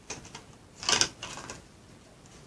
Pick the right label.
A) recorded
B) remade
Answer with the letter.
A